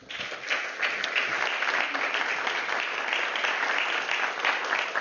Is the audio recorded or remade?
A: recorded